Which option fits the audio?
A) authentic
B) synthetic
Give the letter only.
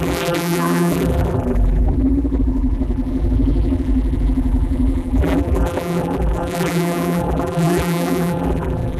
B